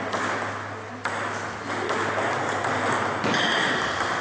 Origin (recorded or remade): recorded